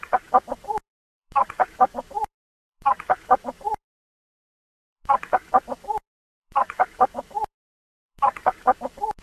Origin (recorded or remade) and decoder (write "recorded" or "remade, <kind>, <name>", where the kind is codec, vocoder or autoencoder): remade, codec, DAC